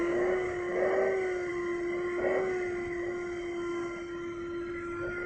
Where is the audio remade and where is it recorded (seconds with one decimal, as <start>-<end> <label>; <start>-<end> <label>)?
0.0-0.8 remade; 0.8-5.3 recorded